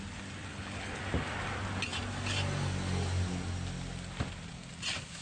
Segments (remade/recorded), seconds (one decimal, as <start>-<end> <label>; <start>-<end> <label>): 0.0-0.5 recorded; 0.5-1.0 remade; 1.0-5.2 recorded